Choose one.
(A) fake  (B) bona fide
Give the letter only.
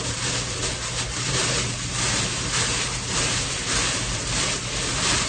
A